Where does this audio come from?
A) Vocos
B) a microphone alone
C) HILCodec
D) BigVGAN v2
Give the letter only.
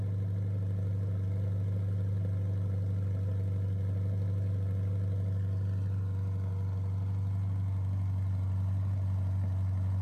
B